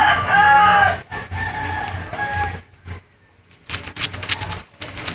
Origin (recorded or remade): recorded